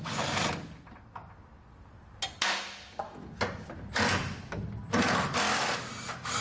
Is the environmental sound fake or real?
real